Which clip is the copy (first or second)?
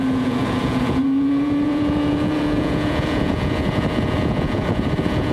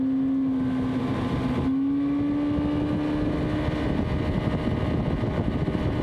first